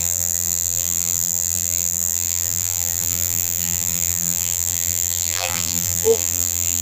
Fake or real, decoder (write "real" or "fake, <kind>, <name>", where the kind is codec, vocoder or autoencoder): fake, vocoder, BigVGAN v2